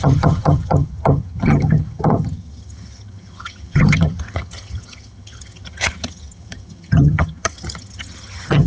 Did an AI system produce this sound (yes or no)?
yes